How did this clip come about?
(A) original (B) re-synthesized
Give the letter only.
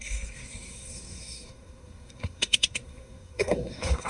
B